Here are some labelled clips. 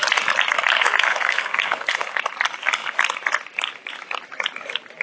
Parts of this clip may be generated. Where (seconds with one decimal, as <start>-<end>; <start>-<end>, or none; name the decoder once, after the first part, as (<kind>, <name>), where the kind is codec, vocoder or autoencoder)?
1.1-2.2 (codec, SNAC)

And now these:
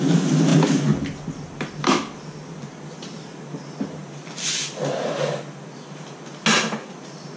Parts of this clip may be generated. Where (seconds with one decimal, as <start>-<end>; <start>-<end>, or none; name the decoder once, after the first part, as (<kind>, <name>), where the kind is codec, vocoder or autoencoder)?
none

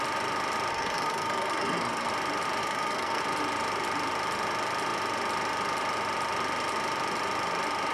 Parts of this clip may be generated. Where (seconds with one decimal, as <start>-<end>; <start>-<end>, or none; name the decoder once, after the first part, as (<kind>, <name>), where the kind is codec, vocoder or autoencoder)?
0.7-2.1 (codec, SNAC); 2.6-3.2

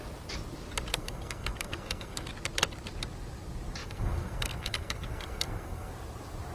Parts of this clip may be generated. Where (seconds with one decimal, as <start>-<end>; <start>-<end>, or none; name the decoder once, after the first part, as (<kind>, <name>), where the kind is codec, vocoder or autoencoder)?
0.9-2.3 (codec, SNAC); 3.8-5.9

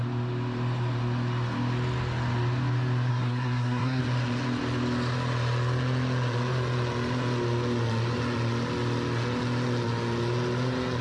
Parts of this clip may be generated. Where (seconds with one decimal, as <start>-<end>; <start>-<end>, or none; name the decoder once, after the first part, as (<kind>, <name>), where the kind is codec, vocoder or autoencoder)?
3.1-4.0 (codec, SNAC)

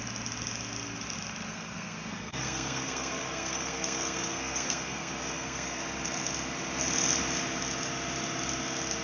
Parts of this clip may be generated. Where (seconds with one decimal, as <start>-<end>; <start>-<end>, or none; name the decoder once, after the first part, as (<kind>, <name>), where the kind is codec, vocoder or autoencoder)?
1.5-5.8 (codec, SNAC)